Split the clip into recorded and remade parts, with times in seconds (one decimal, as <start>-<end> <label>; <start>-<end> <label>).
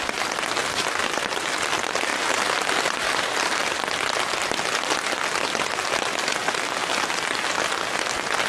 0.0-2.1 recorded; 2.1-3.6 remade; 3.6-8.5 recorded